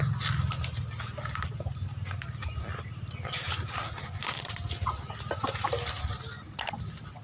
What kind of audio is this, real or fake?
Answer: real